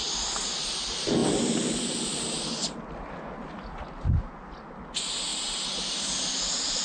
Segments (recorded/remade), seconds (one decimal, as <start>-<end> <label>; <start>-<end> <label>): 0.0-6.8 recorded